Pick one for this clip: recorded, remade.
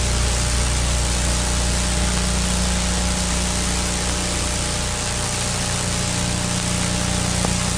recorded